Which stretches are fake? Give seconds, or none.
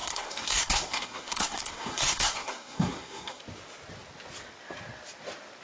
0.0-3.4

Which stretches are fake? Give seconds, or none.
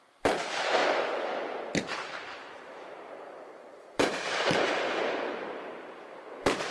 0.0-0.8; 2.2-6.7